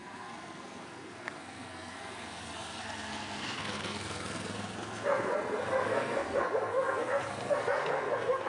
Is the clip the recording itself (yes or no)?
no